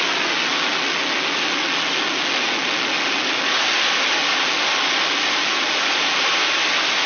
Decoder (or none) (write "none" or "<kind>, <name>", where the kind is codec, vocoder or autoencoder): none